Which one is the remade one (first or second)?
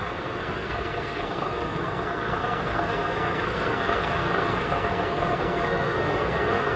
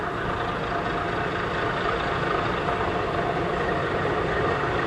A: first